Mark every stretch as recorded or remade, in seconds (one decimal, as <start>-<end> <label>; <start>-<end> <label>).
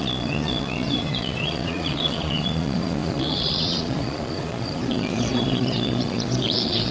0.0-6.9 remade